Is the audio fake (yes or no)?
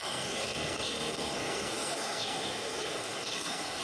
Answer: yes